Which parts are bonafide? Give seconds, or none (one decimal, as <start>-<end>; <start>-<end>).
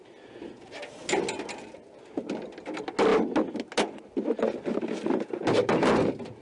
0.0-6.4